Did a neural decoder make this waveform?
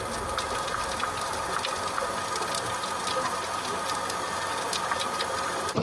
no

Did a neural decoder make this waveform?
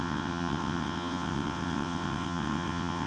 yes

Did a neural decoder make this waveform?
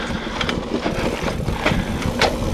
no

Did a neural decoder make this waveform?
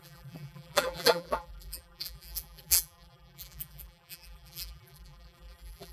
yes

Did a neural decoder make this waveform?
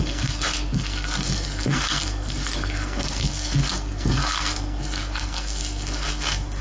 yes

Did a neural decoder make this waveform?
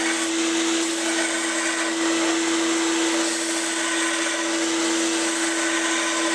no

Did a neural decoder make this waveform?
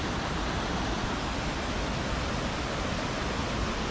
no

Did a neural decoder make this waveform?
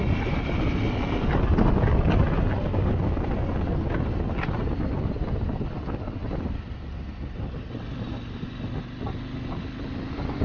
no